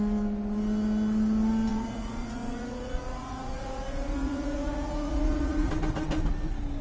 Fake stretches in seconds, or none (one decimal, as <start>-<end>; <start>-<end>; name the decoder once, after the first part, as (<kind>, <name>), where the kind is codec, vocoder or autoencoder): 1.7-5.7 (vocoder, Vocos)